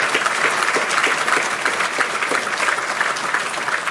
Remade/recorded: recorded